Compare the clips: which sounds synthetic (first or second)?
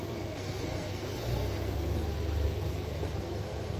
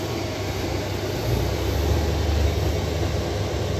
first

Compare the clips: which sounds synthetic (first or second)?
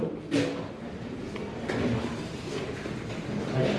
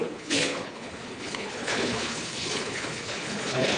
second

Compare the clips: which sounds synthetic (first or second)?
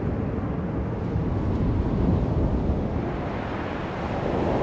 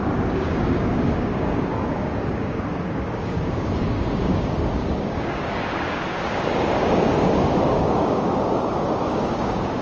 second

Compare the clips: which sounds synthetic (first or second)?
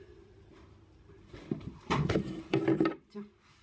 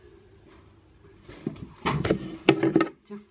first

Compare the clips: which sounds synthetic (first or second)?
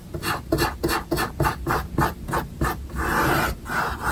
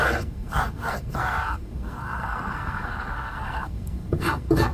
second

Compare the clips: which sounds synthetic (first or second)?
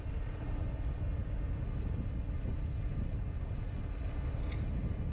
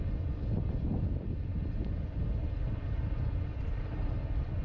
second